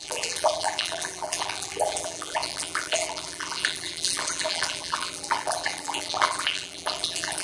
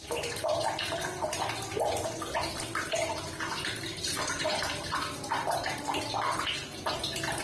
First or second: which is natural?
second